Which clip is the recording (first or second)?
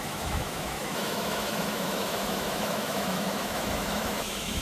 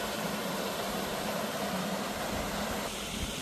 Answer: second